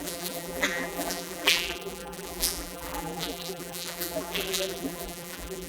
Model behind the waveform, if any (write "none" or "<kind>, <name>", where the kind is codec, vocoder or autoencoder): vocoder, BigVGAN v2